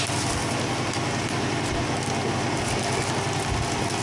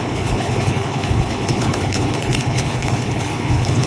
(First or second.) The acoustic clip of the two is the first